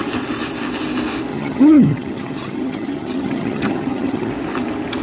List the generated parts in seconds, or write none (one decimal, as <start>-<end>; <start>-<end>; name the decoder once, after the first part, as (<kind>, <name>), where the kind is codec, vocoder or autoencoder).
1.3-4.3 (vocoder, HiFi-GAN)